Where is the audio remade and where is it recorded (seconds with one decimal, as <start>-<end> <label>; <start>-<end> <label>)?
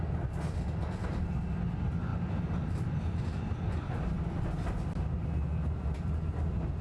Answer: 0.0-6.8 recorded